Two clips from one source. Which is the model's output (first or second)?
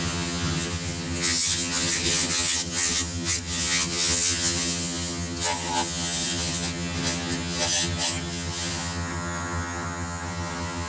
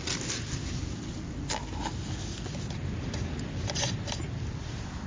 first